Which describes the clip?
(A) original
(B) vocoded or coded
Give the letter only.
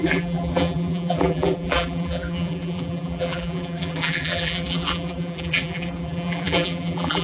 B